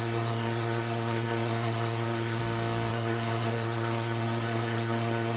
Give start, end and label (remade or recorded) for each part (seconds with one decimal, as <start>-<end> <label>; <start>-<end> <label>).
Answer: 0.0-2.4 remade; 2.4-2.9 recorded; 2.9-5.4 remade